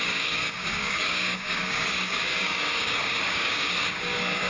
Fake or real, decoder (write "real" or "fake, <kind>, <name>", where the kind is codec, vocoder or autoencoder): fake, codec, DAC